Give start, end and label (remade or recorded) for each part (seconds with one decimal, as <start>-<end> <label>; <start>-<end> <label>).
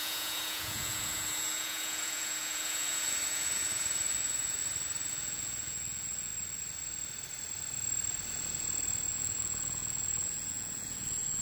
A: 0.0-4.6 remade; 4.6-5.1 recorded; 5.1-6.3 remade; 6.3-9.1 recorded; 9.1-11.4 remade